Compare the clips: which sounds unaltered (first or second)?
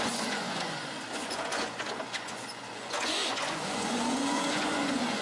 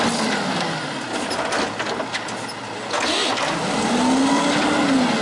second